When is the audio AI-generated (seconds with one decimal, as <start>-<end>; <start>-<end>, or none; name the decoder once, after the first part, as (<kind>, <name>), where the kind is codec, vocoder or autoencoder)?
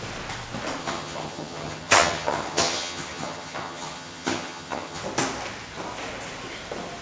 0.8-5.0 (vocoder, HiFi-GAN)